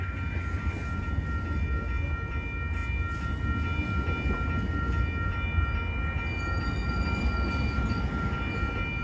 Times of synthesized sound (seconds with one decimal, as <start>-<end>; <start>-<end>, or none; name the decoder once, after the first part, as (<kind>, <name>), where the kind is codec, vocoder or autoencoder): none